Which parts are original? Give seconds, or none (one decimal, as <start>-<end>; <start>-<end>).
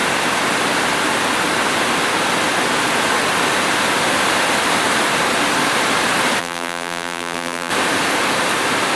0.0-6.4; 7.7-9.0